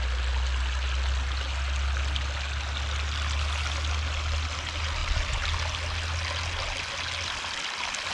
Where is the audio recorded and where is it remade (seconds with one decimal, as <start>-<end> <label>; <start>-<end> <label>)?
0.0-8.1 recorded